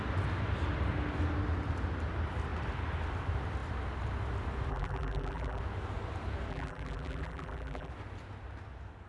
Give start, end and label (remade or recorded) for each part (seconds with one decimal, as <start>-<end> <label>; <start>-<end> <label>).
0.0-4.7 recorded; 4.7-5.6 remade; 5.6-6.5 recorded; 6.5-7.9 remade; 7.9-9.1 recorded